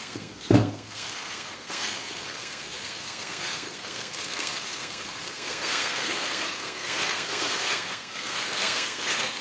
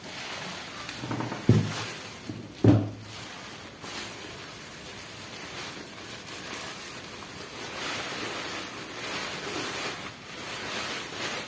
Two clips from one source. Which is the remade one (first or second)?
first